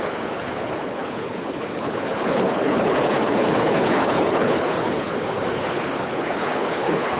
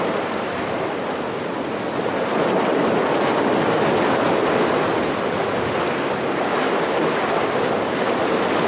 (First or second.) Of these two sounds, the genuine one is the second